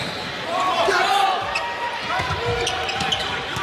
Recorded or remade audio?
recorded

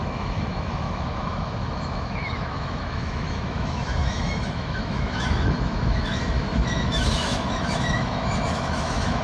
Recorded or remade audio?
remade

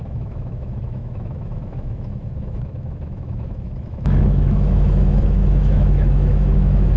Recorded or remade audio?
remade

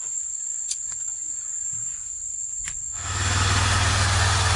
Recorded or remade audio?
recorded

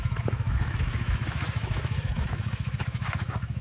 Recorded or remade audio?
remade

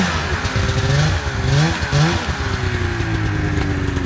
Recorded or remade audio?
recorded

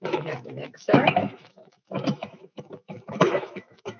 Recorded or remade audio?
remade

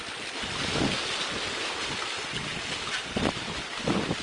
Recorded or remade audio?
recorded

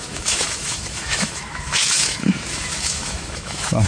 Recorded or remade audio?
remade